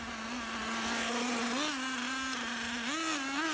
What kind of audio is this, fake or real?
real